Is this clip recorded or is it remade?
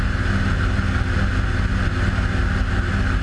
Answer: recorded